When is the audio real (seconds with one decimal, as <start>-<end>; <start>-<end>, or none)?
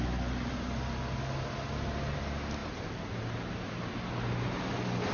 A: 0.0-2.6; 3.2-5.1